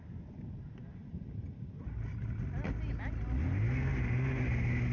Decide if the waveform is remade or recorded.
recorded